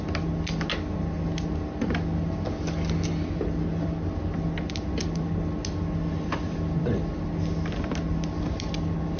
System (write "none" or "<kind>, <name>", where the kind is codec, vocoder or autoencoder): none